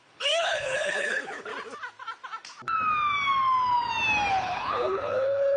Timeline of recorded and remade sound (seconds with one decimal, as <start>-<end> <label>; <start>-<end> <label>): 0.0-1.5 remade; 1.5-4.3 recorded; 4.3-5.6 remade